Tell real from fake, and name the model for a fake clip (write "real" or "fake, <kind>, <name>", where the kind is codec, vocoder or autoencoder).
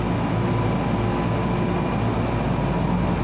real